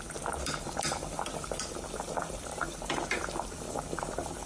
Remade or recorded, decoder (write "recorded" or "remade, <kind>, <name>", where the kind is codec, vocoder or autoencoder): remade, vocoder, BigVGAN v2